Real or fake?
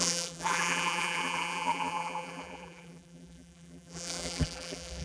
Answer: fake